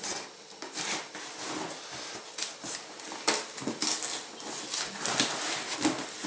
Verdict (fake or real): real